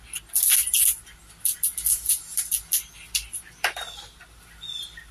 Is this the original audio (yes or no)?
yes